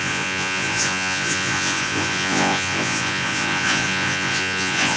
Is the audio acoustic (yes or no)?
no